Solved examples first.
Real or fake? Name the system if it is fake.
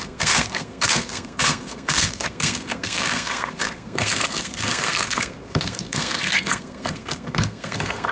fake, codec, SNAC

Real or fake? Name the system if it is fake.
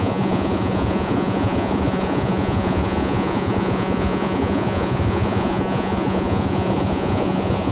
fake, vocoder, Vocos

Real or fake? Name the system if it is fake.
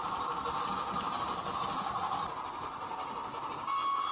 real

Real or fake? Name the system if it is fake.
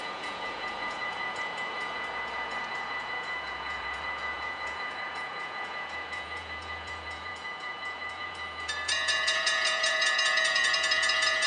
fake, vocoder, Vocos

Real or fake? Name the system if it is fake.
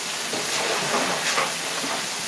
real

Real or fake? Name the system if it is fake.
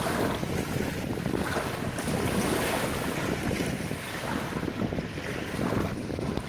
real